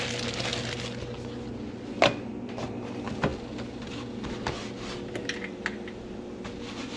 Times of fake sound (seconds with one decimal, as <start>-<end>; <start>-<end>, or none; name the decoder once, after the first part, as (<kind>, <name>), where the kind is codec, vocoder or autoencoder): none